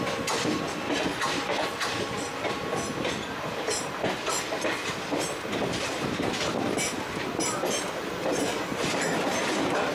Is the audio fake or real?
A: real